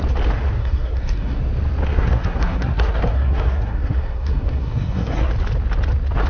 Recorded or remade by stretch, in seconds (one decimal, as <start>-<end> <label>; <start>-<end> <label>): 0.0-0.6 recorded; 0.6-1.4 remade; 1.4-1.9 recorded; 1.9-5.3 remade; 5.3-6.3 recorded